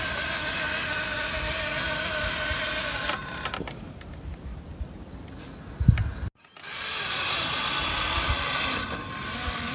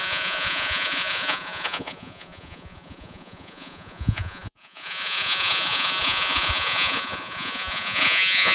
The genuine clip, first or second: first